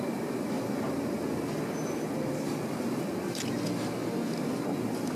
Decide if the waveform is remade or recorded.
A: recorded